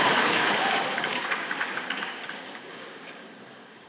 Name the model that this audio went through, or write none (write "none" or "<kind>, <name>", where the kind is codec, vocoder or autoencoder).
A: codec, DAC